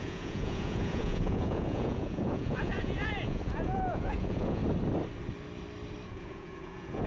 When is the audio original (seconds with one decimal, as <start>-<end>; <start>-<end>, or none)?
4.6-6.1